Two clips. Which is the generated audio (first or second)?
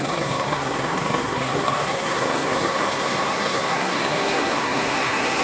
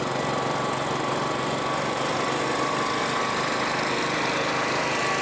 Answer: first